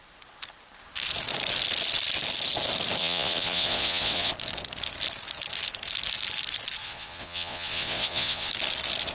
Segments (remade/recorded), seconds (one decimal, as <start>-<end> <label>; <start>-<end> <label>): 0.0-3.0 recorded; 3.0-4.3 remade; 4.3-6.8 recorded; 6.8-8.5 remade; 8.5-9.1 recorded